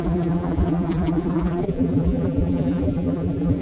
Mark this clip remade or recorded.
remade